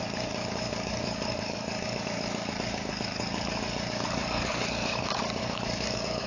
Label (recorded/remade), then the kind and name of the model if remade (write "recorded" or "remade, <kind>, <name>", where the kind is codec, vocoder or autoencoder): remade, codec, DAC